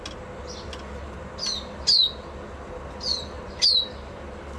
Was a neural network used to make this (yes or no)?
no